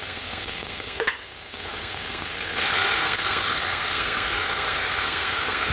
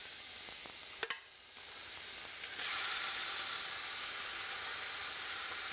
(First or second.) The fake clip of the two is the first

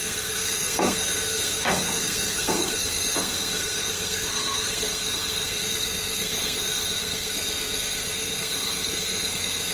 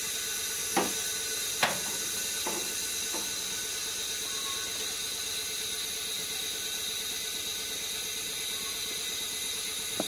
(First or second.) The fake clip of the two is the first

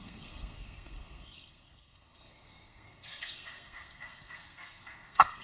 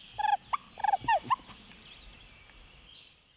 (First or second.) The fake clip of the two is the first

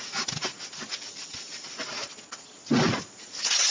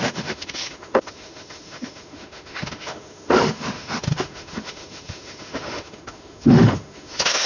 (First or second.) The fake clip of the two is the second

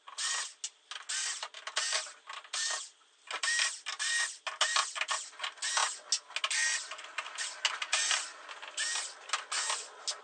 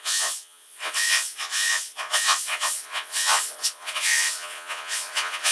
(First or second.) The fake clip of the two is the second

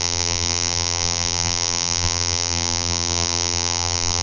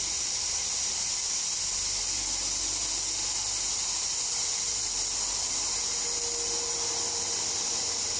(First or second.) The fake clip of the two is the first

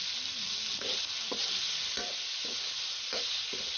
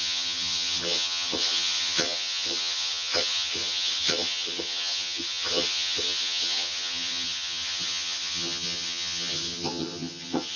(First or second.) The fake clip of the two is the second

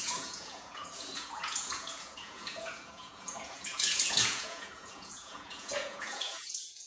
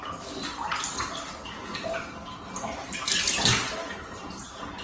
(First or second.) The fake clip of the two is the first